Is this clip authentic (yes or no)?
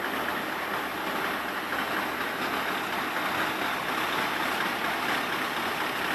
yes